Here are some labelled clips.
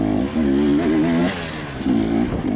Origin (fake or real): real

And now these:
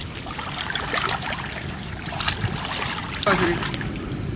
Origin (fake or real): real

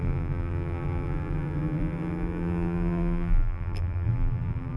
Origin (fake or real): fake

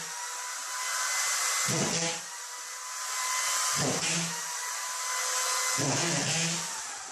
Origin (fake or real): real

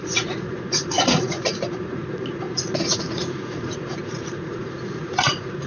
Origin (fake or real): fake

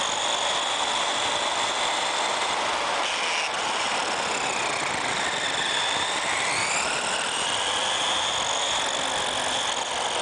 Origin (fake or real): real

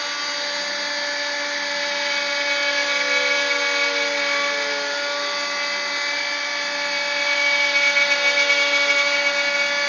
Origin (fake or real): real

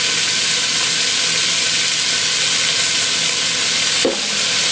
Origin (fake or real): real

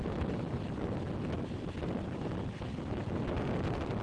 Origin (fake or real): real